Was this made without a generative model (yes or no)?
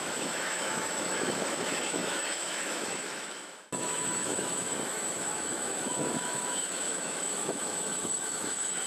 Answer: no